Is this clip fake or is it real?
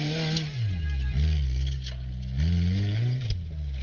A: real